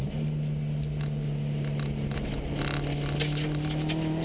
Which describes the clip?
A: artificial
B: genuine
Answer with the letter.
B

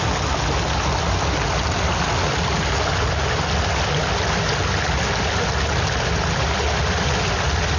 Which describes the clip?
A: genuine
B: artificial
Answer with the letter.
A